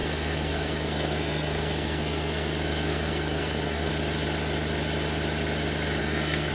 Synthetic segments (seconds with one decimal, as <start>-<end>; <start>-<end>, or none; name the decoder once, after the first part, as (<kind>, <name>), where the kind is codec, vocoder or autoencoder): 0.0-3.9 (codec, SNAC); 6.0-6.5